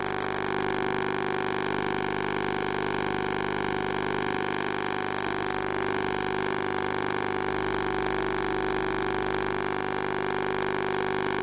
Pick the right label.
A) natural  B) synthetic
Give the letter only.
A